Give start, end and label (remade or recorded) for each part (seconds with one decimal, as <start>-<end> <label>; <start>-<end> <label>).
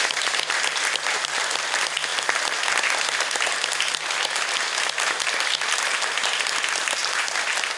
0.0-7.0 recorded; 7.0-7.8 remade